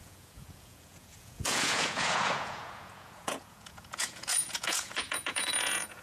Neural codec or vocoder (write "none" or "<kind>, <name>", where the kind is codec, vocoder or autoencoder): vocoder, Vocos